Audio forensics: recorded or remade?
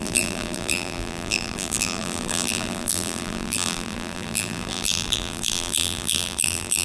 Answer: remade